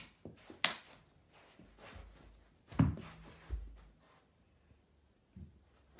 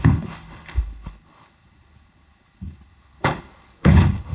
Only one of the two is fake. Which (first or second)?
second